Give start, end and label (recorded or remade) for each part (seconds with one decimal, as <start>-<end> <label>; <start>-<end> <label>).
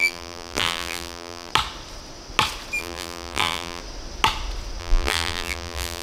0.0-1.5 remade; 1.5-2.8 recorded; 2.8-3.8 remade; 3.8-4.8 recorded; 4.8-6.0 remade